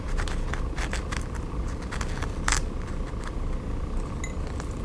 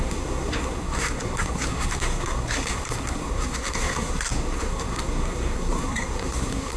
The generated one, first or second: second